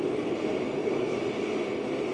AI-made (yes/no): no